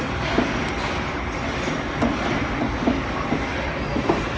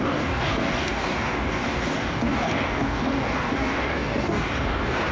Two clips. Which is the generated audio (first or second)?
second